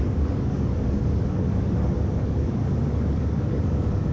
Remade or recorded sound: remade